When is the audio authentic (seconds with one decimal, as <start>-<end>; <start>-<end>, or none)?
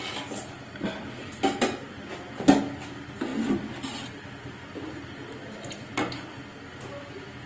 0.0-7.5